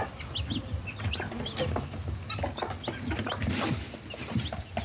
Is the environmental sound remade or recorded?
recorded